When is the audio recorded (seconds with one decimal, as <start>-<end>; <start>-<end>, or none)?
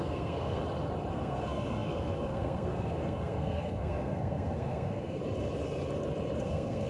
0.6-1.1; 5.2-6.4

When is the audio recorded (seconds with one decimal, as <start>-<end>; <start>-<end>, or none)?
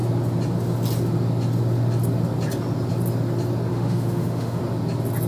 0.0-3.7; 4.6-5.3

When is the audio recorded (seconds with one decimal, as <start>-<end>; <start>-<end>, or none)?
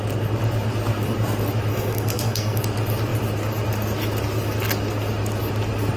0.0-1.7; 2.6-6.0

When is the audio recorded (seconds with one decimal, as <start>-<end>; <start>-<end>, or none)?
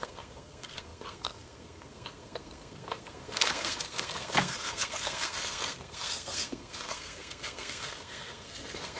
none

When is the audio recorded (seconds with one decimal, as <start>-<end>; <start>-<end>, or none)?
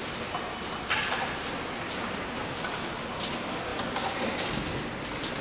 0.0-5.4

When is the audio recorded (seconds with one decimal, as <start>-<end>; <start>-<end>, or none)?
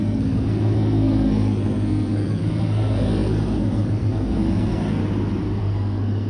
5.0-5.6